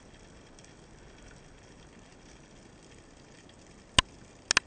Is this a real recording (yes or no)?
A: yes